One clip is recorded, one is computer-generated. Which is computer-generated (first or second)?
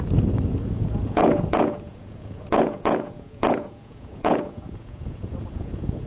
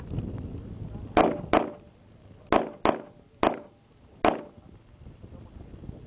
first